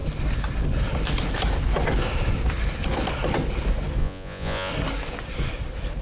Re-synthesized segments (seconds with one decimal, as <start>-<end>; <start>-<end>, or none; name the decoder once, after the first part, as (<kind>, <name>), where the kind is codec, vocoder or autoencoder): 4.0-4.7 (vocoder, Vocos)